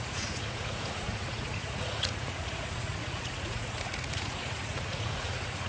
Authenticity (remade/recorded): remade